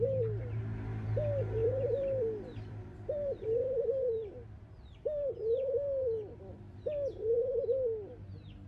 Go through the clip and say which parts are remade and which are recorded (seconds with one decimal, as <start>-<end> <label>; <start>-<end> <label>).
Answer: 0.0-1.6 recorded; 1.6-6.4 remade; 6.4-8.7 recorded